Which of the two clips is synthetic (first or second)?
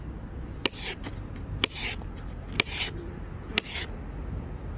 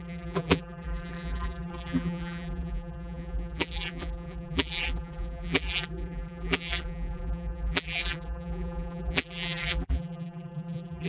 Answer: second